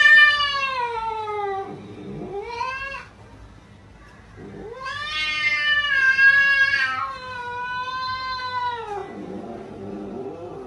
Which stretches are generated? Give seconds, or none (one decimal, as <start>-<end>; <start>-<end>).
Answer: none